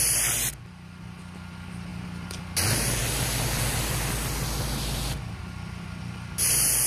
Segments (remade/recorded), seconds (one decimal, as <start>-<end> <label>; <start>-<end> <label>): 0.0-6.9 recorded